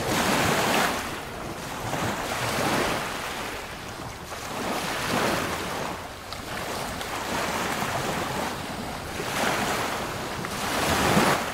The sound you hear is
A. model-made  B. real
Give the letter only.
B